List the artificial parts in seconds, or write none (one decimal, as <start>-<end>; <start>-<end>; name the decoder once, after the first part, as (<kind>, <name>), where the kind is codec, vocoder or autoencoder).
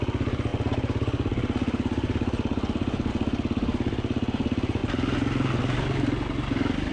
none